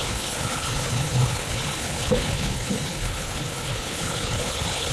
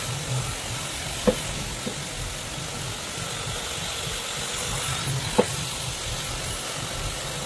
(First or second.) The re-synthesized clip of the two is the first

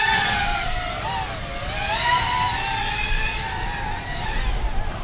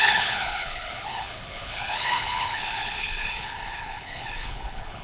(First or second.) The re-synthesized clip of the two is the second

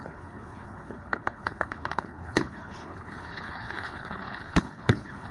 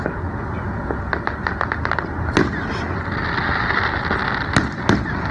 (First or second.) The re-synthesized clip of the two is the first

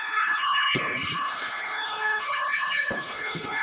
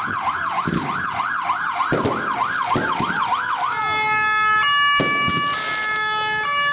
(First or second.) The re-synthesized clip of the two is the first